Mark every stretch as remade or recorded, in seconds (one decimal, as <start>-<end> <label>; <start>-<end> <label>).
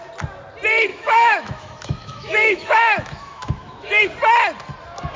0.0-0.9 recorded; 0.9-4.0 remade; 4.0-5.2 recorded